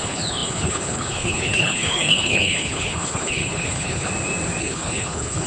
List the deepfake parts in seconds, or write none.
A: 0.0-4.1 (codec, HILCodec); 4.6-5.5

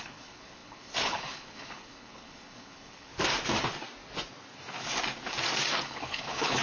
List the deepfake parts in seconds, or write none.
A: 0.0-3.1 (codec, HILCodec); 5.8-6.6

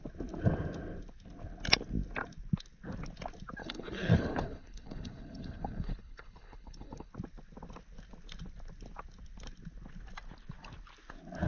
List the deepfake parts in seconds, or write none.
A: 3.6-7.1 (codec, HILCodec)